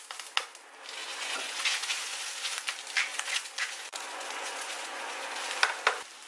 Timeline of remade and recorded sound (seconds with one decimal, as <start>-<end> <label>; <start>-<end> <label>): 0.0-1.0 recorded; 1.0-2.5 remade; 2.5-3.1 recorded; 3.1-5.4 remade; 5.4-6.3 recorded